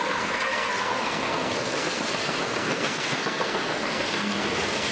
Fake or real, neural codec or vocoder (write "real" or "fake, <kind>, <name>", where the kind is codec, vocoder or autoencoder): fake, codec, SNAC